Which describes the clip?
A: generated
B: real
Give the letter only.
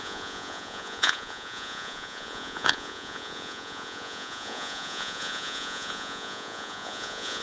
A